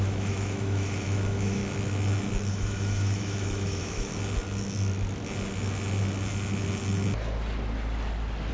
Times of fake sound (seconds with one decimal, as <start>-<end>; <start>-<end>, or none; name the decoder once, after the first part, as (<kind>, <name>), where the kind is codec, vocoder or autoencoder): 0.0-1.6 (autoencoder, DAC-VAE); 2.5-4.1